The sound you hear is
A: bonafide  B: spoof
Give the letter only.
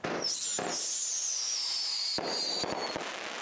A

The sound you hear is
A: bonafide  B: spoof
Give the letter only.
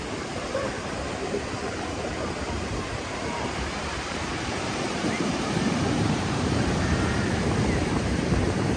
B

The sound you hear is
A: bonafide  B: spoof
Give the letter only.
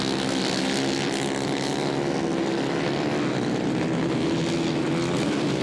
A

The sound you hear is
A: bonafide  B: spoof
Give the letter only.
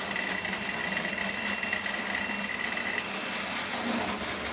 A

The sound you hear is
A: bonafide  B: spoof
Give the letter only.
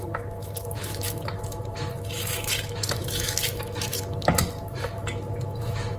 B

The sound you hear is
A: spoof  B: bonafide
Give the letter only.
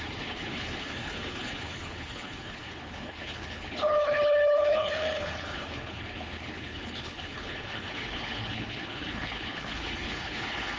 A